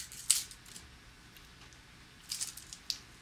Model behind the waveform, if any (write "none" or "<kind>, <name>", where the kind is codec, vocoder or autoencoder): none